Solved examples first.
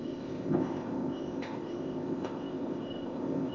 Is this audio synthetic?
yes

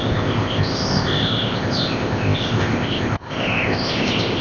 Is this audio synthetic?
yes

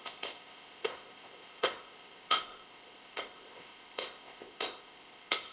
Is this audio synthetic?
yes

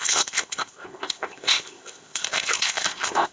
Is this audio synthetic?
yes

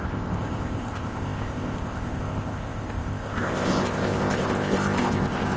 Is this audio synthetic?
yes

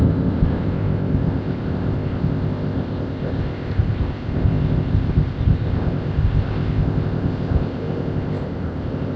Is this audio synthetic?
yes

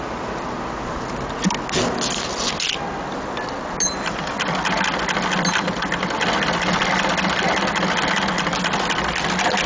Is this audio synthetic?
no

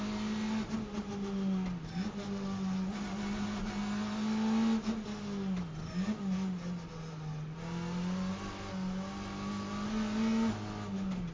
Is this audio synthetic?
no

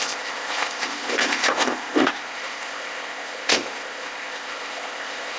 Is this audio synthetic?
yes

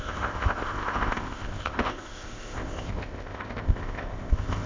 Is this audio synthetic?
yes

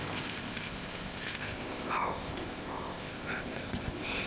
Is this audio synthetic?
yes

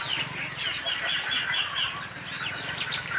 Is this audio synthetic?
no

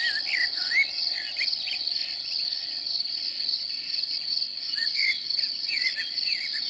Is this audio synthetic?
no